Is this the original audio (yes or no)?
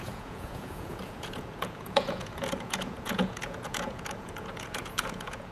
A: no